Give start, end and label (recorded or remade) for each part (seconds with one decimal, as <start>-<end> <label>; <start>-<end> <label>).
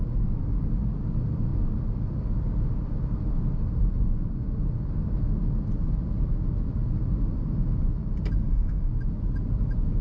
0.0-8.4 recorded; 8.4-8.9 remade; 8.9-10.0 recorded